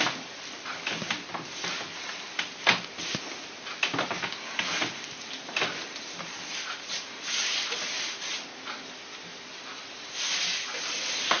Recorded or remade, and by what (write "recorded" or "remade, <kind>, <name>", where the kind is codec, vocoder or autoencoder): recorded